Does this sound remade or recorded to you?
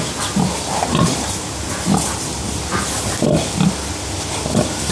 recorded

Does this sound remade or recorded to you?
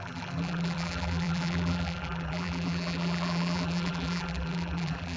remade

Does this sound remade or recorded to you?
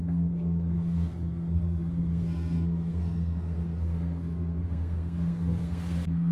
remade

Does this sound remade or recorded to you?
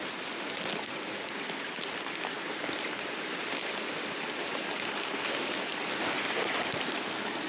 recorded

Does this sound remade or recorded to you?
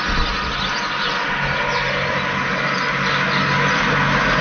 recorded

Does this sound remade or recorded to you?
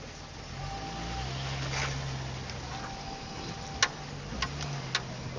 recorded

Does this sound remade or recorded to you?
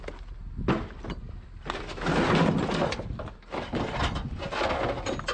recorded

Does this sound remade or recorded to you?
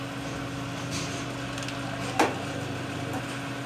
recorded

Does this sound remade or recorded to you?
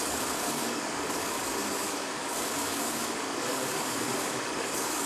remade